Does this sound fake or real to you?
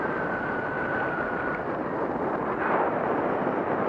real